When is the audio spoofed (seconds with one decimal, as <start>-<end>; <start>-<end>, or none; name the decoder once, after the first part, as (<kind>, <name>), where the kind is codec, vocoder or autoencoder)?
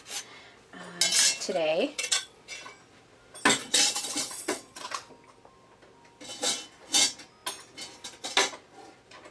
1.7-2.4 (vocoder, WaveNeXt); 3.6-5.1